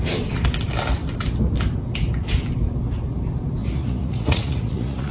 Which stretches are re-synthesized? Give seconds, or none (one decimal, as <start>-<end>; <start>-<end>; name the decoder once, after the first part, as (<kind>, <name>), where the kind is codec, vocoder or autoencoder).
3.6-5.1 (vocoder, Vocos)